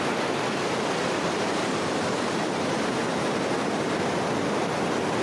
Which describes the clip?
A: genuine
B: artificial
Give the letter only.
A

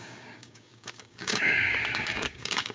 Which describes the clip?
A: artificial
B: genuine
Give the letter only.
A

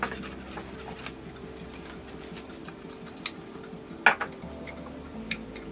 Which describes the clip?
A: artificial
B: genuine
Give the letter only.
B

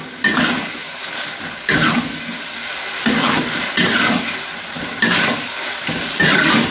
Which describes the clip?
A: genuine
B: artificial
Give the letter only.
A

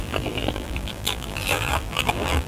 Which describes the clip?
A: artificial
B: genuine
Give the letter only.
A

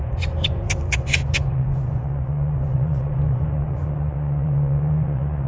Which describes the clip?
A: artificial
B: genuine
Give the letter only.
A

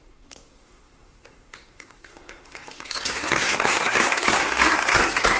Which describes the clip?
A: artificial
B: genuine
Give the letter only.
A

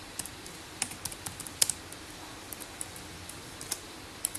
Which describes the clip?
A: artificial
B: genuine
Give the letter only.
B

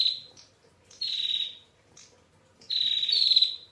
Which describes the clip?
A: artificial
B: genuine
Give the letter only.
B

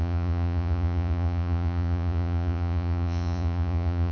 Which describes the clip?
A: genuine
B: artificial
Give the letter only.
B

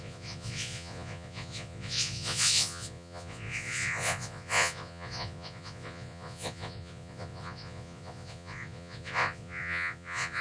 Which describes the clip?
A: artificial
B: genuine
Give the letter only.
A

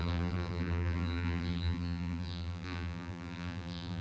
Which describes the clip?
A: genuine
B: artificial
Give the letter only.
B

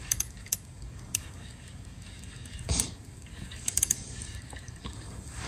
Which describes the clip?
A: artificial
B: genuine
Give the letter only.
A